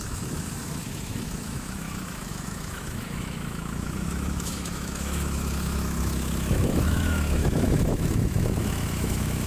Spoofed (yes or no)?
yes